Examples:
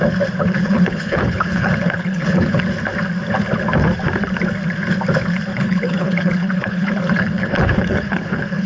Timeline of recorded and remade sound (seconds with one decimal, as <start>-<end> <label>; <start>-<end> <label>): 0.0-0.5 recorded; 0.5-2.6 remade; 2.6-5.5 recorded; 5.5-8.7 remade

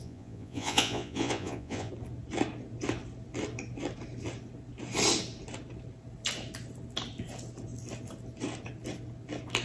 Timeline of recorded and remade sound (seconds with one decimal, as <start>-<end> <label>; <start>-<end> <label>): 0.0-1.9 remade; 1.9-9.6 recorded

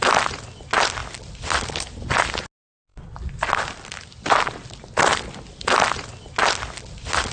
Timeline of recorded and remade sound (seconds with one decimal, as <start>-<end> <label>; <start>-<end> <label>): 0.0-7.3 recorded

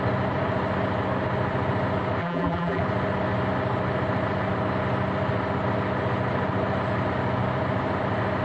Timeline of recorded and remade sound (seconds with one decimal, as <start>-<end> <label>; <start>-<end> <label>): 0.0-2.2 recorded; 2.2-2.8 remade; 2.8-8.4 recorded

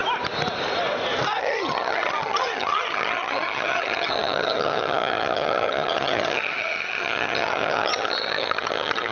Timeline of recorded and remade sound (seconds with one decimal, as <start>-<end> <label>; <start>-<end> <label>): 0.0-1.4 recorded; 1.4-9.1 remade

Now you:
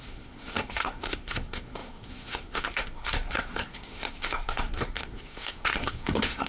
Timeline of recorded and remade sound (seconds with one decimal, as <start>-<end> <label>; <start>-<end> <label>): 0.0-6.5 remade

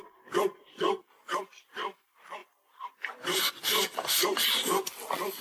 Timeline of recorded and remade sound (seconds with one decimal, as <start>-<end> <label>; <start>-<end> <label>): 0.0-5.4 recorded

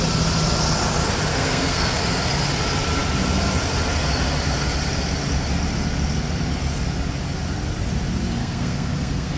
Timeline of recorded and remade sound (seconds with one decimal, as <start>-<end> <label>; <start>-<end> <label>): 0.0-1.3 recorded; 1.3-2.0 remade; 2.0-8.4 recorded; 8.4-9.4 remade